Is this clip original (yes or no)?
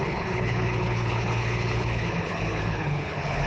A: no